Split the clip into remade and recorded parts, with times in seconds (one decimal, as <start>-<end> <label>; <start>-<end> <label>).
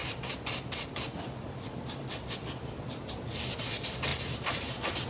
0.0-3.1 remade; 3.1-4.1 recorded; 4.1-5.1 remade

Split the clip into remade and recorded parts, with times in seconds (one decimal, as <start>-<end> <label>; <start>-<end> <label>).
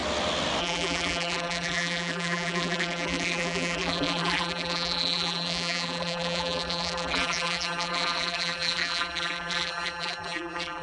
0.0-0.6 recorded; 0.6-10.8 remade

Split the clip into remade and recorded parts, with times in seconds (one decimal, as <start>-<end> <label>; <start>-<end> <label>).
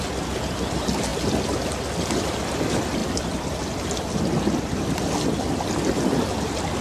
0.0-6.8 recorded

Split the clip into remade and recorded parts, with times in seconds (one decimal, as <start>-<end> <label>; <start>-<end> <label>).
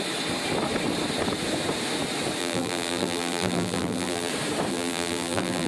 0.0-2.4 recorded; 2.4-4.3 remade; 4.3-4.7 recorded; 4.7-5.7 remade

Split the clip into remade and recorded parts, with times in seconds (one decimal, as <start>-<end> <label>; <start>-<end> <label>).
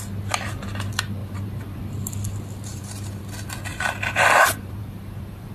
0.0-1.2 recorded; 1.2-1.8 remade; 1.8-2.7 recorded; 2.7-3.2 remade; 3.2-3.7 recorded; 3.7-5.5 remade